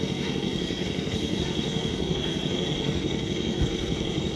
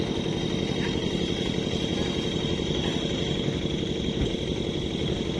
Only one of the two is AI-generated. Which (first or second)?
first